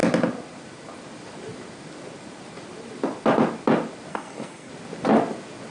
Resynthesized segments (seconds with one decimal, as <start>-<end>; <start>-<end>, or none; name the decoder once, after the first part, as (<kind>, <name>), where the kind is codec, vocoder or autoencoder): 4.1-4.7 (codec, SNAC)